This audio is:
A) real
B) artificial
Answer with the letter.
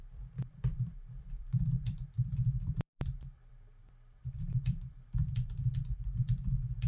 B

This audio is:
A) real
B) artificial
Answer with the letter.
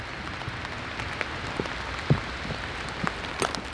A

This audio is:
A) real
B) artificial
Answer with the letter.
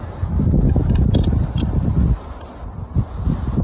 A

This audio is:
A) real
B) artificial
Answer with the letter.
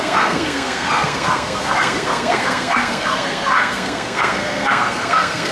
B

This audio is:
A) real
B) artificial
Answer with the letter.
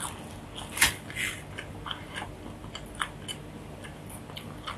A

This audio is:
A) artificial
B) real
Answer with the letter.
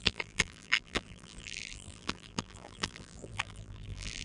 A